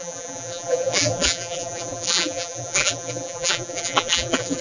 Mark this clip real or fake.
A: fake